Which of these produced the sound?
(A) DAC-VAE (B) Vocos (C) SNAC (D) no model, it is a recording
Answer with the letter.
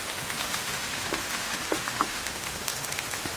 A